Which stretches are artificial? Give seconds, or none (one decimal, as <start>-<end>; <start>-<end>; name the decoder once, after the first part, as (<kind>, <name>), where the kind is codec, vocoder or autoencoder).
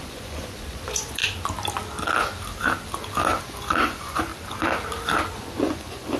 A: 0.0-1.2 (vocoder, Vocos); 3.4-4.3; 5.3-6.2